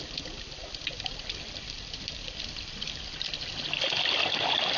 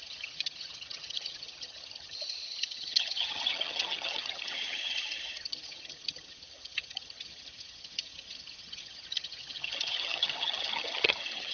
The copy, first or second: second